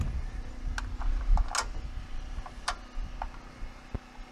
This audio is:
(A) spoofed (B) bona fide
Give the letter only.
B